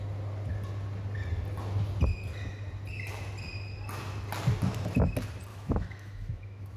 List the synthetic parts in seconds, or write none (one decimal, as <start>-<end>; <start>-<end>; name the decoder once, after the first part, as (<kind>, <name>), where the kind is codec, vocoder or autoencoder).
5.5-6.8 (autoencoder, DAC-VAE)